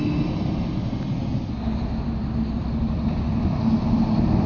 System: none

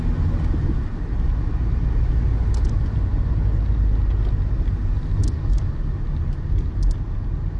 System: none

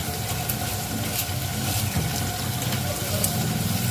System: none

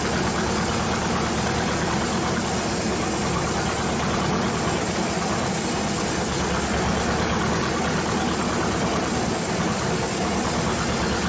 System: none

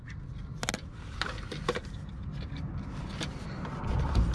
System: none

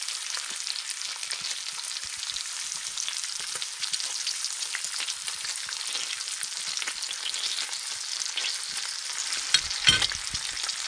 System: none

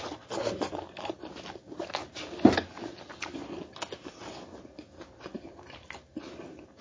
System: none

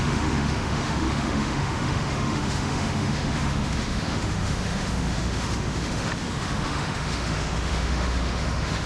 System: autoencoder, DAC-VAE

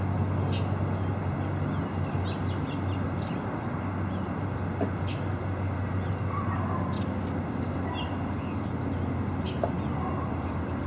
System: none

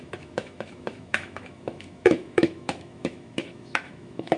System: autoencoder, DAC-VAE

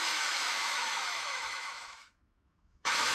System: autoencoder, DAC-VAE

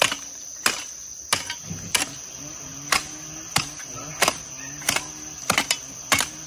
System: none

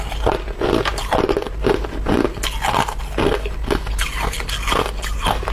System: none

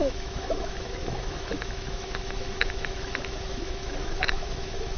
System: autoencoder, DAC-VAE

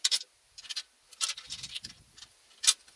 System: none